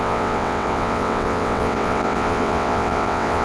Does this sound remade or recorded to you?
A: remade